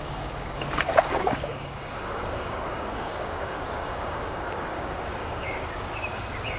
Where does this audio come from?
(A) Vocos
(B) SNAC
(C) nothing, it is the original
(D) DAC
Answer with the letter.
D